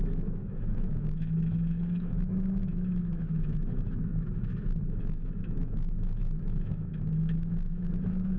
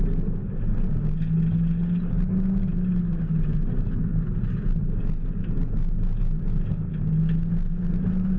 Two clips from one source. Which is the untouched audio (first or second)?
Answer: second